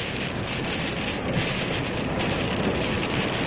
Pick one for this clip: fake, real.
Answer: real